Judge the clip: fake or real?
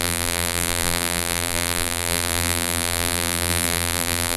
fake